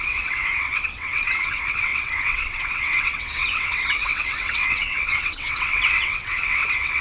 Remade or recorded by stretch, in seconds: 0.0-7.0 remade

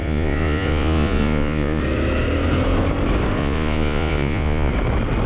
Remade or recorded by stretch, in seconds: 0.0-1.8 remade; 1.8-3.4 recorded; 3.4-4.7 remade; 4.7-5.3 recorded

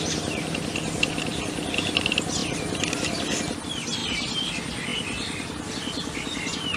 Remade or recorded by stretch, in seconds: 0.0-2.4 recorded; 2.4-3.4 remade; 3.4-4.0 recorded; 4.0-4.5 remade; 4.5-6.8 recorded

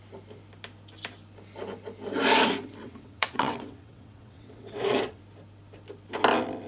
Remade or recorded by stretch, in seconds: 0.0-2.8 recorded; 2.8-5.2 remade; 5.2-6.7 recorded

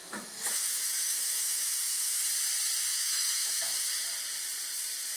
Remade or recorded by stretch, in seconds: 0.0-2.2 remade; 2.2-2.9 recorded; 2.9-4.0 remade; 4.0-5.2 recorded